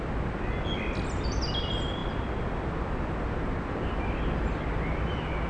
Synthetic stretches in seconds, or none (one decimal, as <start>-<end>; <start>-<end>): none